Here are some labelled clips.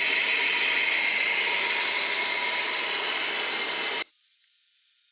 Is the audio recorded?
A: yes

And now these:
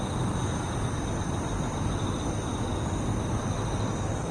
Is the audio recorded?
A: yes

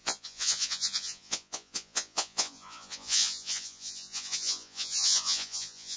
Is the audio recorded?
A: no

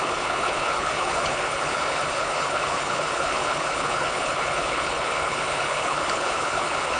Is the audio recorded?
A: no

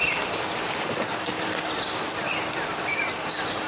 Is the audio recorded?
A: no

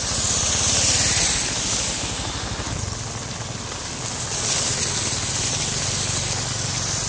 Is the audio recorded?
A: yes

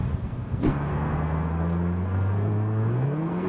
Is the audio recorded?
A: no